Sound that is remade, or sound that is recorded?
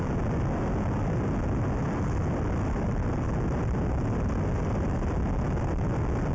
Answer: recorded